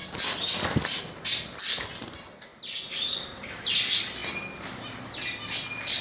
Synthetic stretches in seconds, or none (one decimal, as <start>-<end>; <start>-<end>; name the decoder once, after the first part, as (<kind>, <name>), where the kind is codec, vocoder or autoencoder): none